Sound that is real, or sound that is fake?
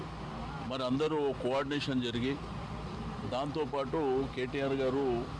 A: real